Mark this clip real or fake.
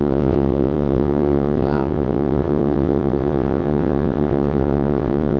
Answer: fake